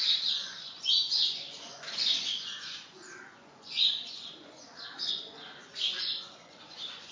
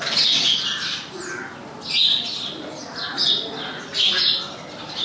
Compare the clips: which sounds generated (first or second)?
first